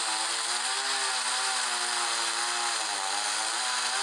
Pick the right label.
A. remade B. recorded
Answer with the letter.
B